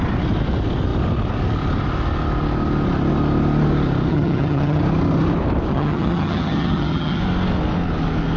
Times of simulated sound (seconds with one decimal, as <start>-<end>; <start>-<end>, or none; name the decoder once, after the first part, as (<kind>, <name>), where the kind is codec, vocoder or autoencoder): 4.1-4.8 (vocoder, HiFi-GAN); 5.7-7.2